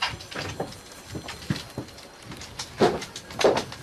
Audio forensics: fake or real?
real